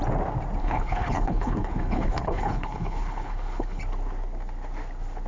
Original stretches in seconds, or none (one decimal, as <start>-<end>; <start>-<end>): 0.0-0.6; 3.8-5.3